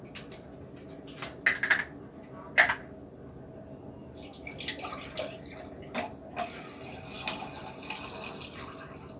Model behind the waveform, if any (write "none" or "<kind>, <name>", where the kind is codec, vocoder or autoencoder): none